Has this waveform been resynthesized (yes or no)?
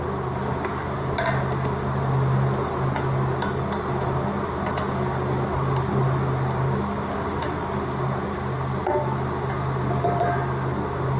no